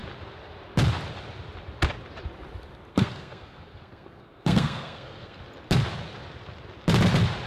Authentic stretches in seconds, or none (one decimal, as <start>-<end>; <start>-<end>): 0.0-2.9; 5.4-7.5